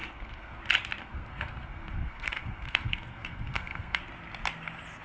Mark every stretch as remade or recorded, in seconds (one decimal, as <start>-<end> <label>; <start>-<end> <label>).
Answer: 0.0-0.6 remade; 0.6-1.0 recorded; 1.0-4.0 remade; 4.0-5.0 recorded